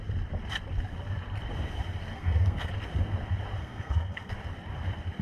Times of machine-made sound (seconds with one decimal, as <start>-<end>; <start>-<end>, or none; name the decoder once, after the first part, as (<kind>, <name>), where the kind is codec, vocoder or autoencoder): 2.1-2.7 (codec, SNAC); 3.6-4.3